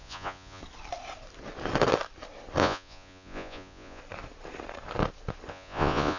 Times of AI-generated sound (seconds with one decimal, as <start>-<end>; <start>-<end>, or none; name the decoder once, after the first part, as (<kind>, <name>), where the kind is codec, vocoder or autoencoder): 0.0-0.6 (vocoder, Vocos); 2.6-4.0; 5.5-6.2